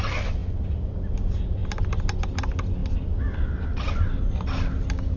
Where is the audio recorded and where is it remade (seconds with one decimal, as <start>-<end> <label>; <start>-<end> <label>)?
0.0-5.2 recorded